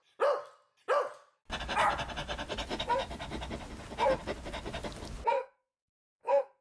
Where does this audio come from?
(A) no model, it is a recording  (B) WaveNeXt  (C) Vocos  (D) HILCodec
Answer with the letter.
A